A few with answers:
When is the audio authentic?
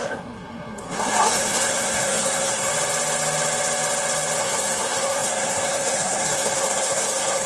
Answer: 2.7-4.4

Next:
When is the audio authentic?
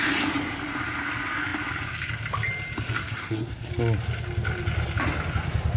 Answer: 0.0-3.0; 3.7-5.8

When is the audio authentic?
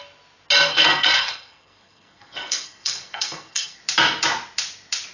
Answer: 0.0-0.7; 3.8-5.1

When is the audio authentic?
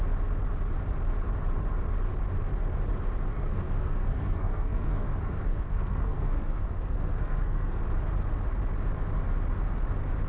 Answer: 0.0-3.3; 7.8-10.3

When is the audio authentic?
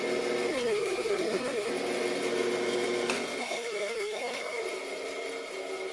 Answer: 0.0-0.5; 1.7-3.4; 4.6-5.9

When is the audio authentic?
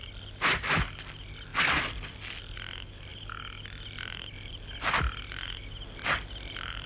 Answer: 0.0-6.9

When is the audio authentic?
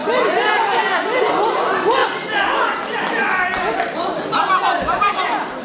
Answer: 0.0-5.6